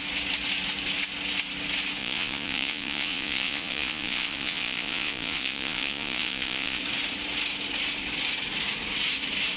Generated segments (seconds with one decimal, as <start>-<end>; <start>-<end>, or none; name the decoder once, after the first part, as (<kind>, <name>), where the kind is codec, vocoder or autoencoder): 2.0-6.8 (vocoder, Vocos)